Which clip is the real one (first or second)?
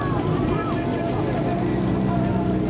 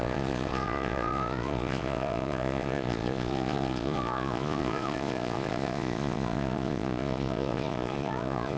first